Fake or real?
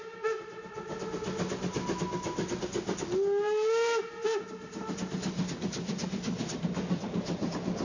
real